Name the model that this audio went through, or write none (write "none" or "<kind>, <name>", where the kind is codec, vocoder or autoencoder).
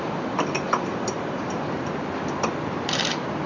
vocoder, BigVGAN v2